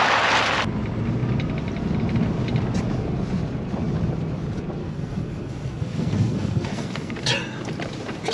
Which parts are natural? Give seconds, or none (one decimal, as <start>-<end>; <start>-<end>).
0.0-4.8; 7.1-8.3